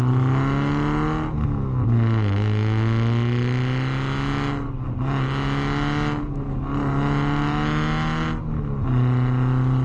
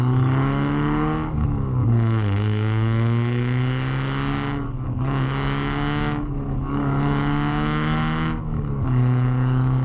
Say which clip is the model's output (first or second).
second